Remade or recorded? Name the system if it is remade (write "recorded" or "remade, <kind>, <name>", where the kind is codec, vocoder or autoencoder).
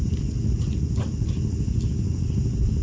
recorded